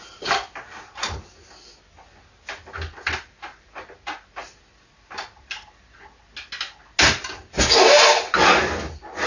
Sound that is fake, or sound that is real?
real